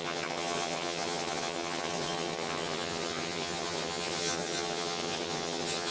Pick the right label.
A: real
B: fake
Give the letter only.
B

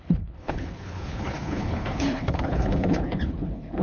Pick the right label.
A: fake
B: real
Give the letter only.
A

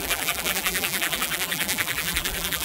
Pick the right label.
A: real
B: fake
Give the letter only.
B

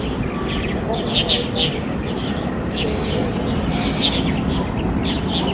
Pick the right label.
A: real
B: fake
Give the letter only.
A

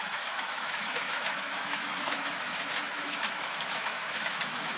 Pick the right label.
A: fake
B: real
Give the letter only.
A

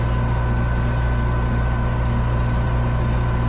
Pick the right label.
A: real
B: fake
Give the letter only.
A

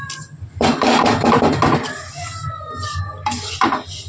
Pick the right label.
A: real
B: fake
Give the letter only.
A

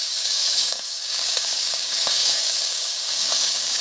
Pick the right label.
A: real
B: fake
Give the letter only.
B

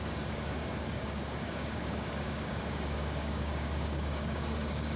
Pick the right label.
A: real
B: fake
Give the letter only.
B